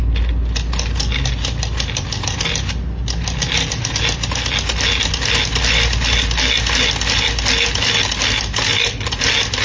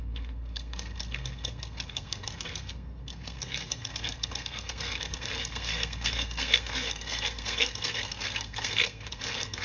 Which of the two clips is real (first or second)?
first